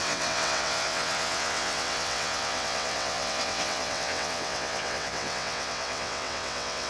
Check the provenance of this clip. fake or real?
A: fake